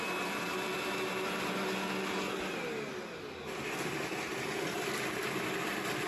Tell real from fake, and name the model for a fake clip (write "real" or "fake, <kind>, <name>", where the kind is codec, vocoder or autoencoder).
real